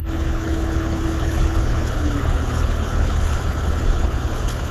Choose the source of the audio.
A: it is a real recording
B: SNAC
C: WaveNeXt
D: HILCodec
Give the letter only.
D